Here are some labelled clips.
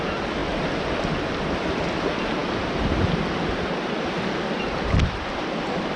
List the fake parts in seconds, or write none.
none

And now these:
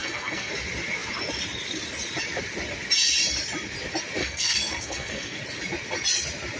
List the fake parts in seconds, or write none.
0.0-0.5 (codec, SNAC); 4.2-5.4

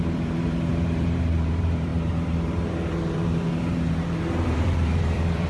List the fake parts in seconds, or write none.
0.0-5.5 (vocoder, BigVGAN v2)

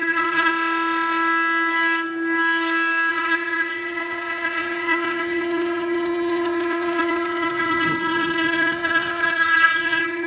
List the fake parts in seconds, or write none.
0.0-0.5 (vocoder, HiFi-GAN); 3.1-10.3

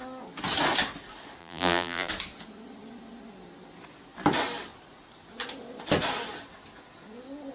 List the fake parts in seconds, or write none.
1.4-2.1 (vocoder, BigVGAN v2)

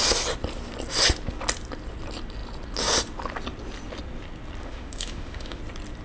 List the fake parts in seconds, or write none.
4.6-5.6 (autoencoder, DAC-VAE)

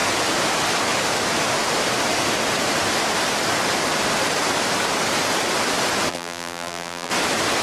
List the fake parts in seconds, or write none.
6.1-7.1 (vocoder, BigVGAN v2)